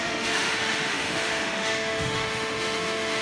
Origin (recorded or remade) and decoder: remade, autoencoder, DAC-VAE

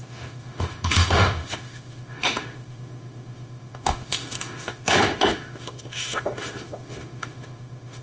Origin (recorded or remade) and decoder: remade, autoencoder, DAC-VAE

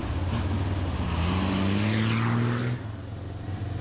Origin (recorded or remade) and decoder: recorded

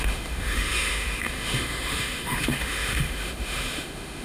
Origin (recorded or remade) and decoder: remade, autoencoder, DAC-VAE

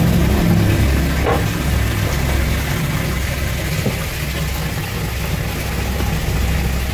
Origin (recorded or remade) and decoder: recorded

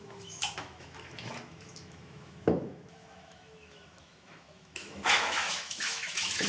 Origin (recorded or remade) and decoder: remade, autoencoder, DAC-VAE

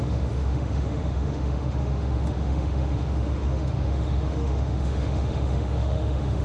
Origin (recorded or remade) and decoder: remade, autoencoder, DAC-VAE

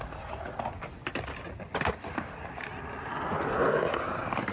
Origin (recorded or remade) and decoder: recorded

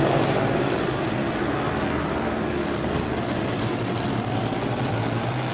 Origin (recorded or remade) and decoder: recorded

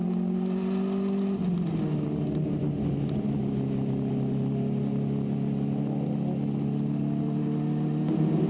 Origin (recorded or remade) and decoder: recorded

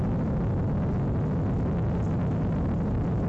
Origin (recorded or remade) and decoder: recorded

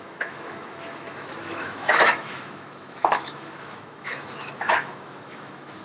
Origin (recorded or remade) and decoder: remade, autoencoder, DAC-VAE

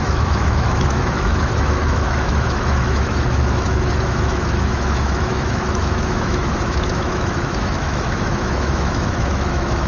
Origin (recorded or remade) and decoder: remade, autoencoder, DAC-VAE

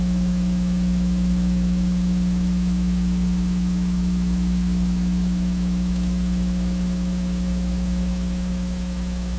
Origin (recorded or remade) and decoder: remade, autoencoder, DAC-VAE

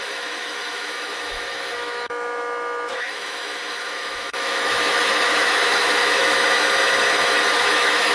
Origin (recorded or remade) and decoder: remade, autoencoder, DAC-VAE